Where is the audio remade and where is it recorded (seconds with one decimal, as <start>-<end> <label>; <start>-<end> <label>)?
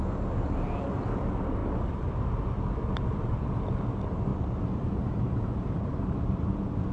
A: 0.0-1.6 recorded; 1.6-3.4 remade; 3.4-6.9 recorded